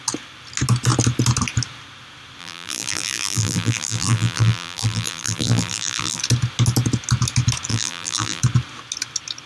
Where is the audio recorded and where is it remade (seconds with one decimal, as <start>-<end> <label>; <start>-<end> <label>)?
0.0-2.4 recorded; 2.4-6.2 remade; 6.2-7.7 recorded; 7.7-8.4 remade; 8.4-9.5 recorded